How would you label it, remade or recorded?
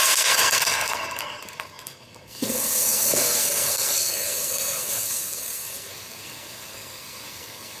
remade